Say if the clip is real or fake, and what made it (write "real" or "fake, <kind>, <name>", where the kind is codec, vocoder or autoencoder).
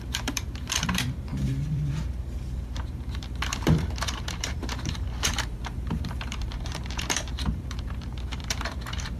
fake, vocoder, BigVGAN v2